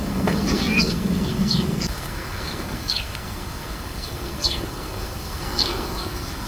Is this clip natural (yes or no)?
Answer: no